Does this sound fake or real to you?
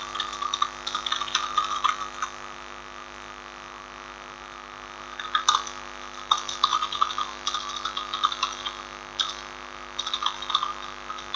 real